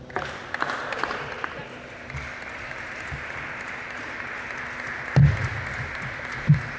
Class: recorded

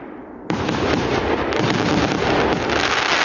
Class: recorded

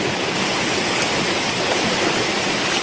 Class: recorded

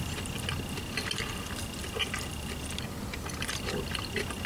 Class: recorded